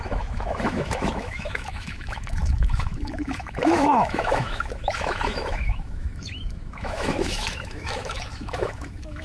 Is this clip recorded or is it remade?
remade